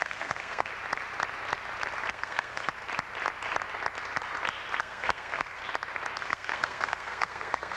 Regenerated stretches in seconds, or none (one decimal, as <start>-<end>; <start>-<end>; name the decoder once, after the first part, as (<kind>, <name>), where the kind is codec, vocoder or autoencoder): 0.0-0.7 (codec, SNAC); 2.1-2.7; 4.8-5.6; 6.2-7.8